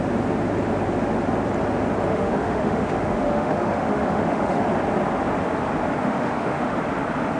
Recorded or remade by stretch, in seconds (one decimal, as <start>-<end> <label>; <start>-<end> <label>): 0.0-2.1 recorded; 2.1-4.6 remade; 4.6-6.0 recorded; 6.0-6.7 remade; 6.7-7.4 recorded